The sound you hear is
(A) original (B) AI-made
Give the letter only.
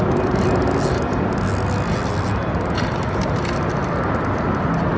A